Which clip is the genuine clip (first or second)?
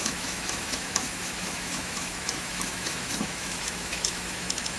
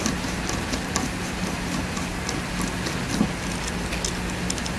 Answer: second